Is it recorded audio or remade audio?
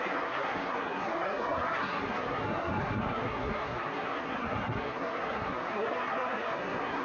remade